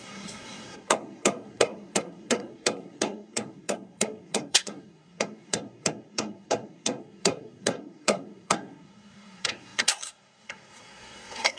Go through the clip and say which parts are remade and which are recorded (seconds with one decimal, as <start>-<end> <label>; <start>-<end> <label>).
0.0-11.6 remade